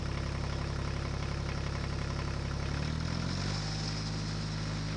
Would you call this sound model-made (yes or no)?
no